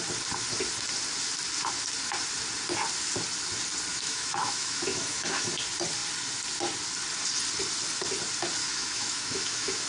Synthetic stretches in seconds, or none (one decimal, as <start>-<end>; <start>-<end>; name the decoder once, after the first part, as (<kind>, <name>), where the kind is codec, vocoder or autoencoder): 3.9-5.5 (autoencoder, DAC-VAE); 8.6-9.9